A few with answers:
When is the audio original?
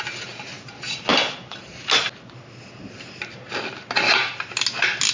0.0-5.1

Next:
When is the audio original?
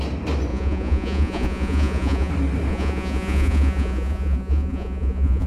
0.0-0.5; 2.3-2.7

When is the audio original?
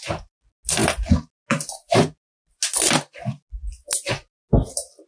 0.0-5.1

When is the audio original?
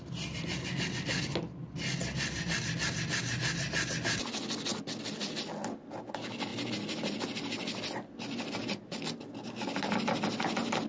0.0-10.9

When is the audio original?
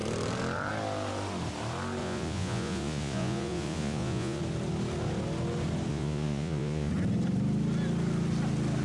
0.0-2.0; 4.4-5.9; 6.9-8.8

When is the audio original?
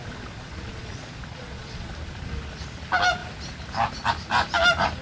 1.9-5.0